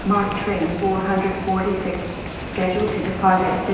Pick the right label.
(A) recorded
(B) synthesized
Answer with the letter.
B